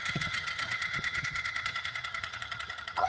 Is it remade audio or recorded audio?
remade